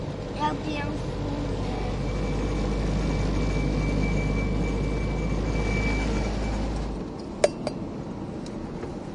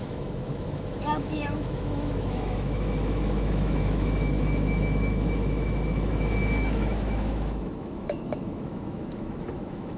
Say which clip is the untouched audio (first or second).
first